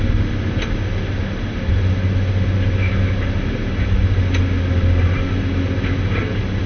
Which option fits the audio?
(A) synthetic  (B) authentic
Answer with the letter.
B